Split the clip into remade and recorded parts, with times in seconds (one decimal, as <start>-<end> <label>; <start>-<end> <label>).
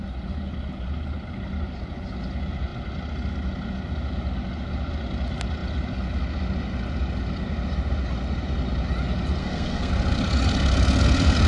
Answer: 0.0-9.4 recorded; 9.4-9.9 remade; 9.9-11.5 recorded